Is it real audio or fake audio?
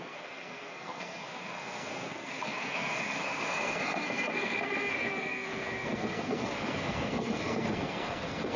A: fake